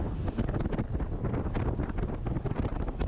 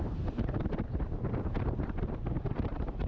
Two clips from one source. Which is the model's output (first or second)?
second